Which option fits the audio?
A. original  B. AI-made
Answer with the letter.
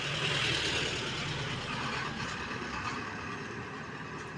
A